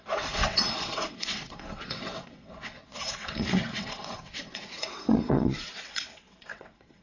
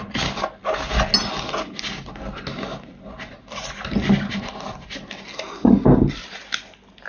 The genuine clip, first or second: second